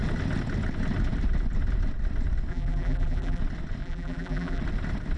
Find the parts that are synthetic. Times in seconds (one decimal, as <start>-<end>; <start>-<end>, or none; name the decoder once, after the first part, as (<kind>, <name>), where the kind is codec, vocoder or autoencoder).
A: 2.5-3.4 (vocoder, BigVGAN v2); 3.8-4.6